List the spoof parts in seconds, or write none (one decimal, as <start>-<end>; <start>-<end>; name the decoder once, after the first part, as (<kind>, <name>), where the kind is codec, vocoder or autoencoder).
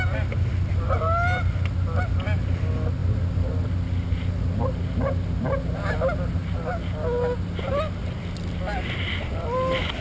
none